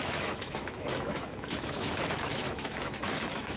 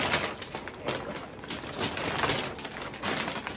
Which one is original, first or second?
second